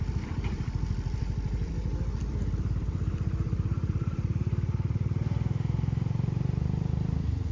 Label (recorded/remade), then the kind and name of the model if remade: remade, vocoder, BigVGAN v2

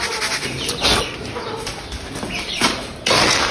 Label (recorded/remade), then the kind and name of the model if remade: recorded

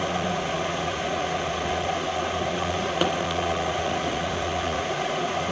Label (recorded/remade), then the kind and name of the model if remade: remade, vocoder, Vocos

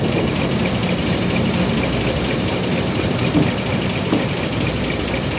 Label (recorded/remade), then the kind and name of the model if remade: recorded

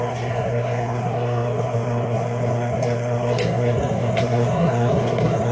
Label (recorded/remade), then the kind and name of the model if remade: remade, codec, SNAC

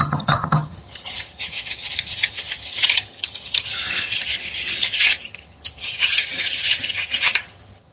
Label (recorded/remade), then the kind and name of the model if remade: remade, vocoder, HiFi-GAN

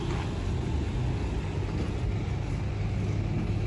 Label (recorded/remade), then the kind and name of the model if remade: recorded